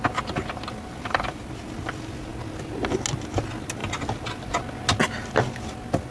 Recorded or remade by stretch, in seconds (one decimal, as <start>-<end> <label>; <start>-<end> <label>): 0.0-6.1 recorded